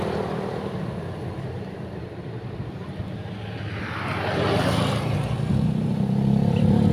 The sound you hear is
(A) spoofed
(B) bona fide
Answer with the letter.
A